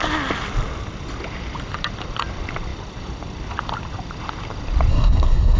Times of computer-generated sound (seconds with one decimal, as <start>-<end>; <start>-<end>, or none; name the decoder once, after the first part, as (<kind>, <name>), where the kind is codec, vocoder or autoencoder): 4.9-5.6 (codec, SNAC)

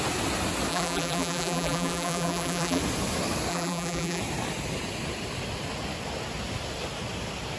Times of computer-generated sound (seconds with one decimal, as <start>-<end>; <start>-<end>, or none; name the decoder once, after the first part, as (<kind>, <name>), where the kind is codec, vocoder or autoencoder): 0.7-2.8 (vocoder, BigVGAN v2); 3.5-4.2

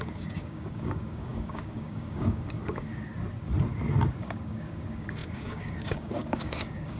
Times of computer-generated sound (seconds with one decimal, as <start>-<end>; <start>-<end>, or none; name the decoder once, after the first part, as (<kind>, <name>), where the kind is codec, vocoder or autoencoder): 0.0-3.1 (codec, DAC); 4.2-7.0

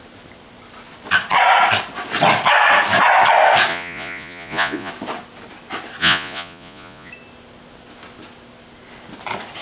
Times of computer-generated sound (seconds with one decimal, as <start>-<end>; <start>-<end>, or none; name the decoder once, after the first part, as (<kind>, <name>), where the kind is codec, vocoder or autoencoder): 3.7-4.9 (vocoder, Vocos); 6.0-7.1

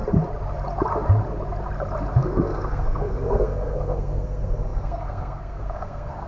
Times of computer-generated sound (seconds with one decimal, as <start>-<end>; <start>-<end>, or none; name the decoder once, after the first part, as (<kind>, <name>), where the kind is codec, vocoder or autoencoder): 2.2-6.3 (codec, SNAC)

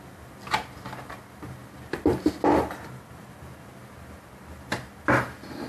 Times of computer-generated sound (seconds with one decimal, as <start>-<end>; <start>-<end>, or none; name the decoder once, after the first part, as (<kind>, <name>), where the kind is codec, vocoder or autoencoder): 1.6-2.3 (vocoder, BigVGAN v2)

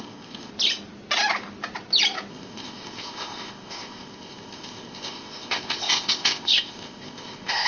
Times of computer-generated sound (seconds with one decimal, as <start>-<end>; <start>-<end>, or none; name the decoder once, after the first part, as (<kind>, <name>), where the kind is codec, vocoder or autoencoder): 0.0-0.5 (codec, ZipCodec); 2.3-7.7